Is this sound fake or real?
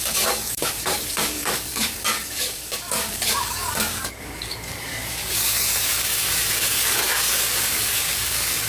fake